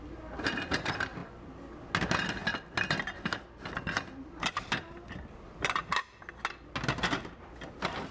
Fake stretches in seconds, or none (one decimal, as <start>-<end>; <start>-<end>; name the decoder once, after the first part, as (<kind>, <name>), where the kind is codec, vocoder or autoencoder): none